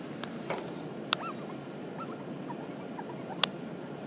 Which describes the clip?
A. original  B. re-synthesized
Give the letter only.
A